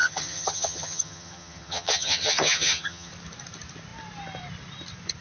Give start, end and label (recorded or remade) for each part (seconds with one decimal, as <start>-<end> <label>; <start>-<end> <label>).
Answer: 0.0-3.1 remade; 3.1-5.2 recorded